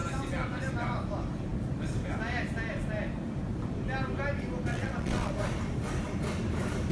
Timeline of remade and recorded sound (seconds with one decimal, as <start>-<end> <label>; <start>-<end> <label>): 0.0-4.7 recorded; 4.7-5.3 remade; 5.3-6.9 recorded